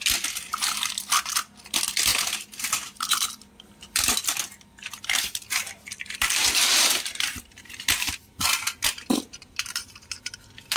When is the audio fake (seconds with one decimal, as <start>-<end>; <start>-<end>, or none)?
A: 2.1-2.7; 6.4-10.2